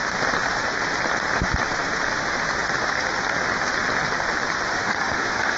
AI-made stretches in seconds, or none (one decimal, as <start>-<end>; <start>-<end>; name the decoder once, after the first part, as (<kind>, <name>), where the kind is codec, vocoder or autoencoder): 4.7-5.6 (autoencoder, DAC-VAE)

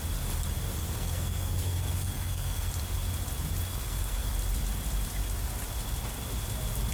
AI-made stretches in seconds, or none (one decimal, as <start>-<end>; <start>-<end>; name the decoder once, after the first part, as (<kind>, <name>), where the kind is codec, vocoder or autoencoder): 0.7-2.7 (codec, SNAC); 3.7-4.3